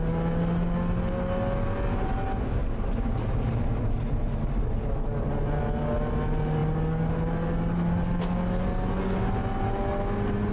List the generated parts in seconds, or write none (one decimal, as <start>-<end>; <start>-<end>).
none